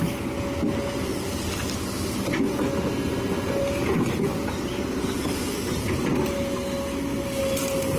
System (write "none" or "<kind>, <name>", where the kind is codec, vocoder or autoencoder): none